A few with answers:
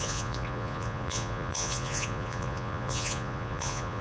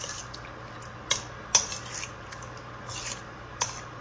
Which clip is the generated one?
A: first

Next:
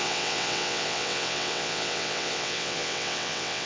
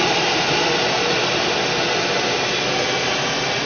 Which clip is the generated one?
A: first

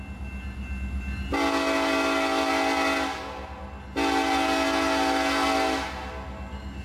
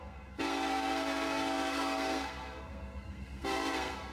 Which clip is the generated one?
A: second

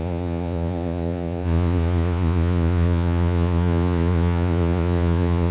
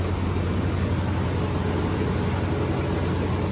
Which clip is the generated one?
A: first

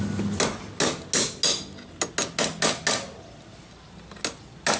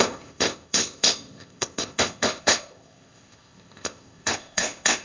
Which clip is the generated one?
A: second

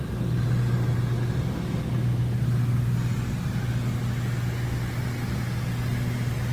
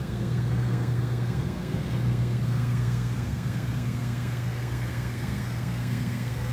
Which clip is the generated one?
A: second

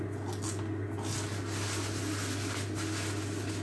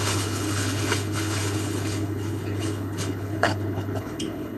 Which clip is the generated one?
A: second